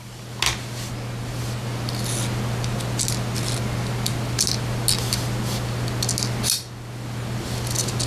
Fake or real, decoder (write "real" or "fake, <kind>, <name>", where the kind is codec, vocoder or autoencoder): real